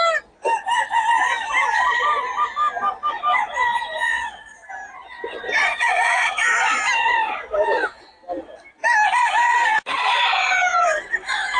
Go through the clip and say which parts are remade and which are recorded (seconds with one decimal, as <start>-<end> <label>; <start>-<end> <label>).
0.0-4.1 recorded; 4.1-4.7 remade; 4.7-5.7 recorded; 5.7-6.3 remade; 6.3-9.2 recorded; 9.2-10.2 remade; 10.2-11.6 recorded